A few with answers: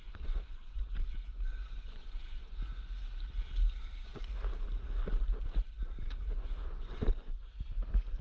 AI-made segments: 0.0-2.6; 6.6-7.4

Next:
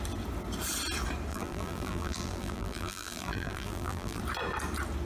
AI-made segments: 1.3-4.2

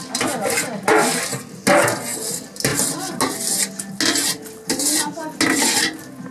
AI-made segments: none

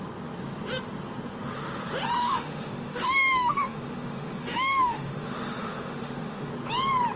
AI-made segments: 2.2-6.5